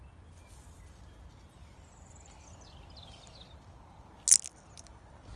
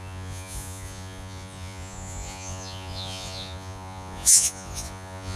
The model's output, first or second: second